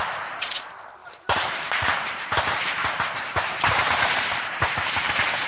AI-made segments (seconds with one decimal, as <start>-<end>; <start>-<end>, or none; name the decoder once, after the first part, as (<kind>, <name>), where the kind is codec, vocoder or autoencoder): 1.0-2.4 (vocoder, BigVGAN v2); 2.8-5.1